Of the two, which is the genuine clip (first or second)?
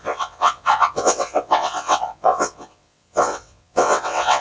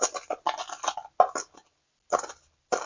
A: second